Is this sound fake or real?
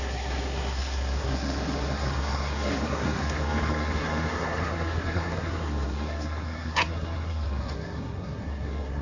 fake